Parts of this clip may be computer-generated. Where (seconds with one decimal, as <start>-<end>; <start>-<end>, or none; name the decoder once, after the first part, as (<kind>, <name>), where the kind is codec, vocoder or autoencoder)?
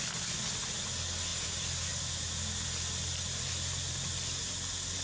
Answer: none